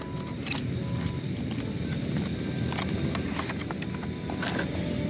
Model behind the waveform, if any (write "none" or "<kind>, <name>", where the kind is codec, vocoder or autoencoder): none